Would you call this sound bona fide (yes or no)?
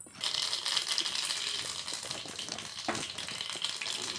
yes